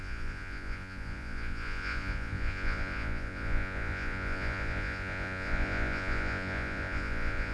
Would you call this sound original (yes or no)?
no